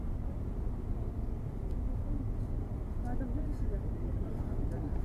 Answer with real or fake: real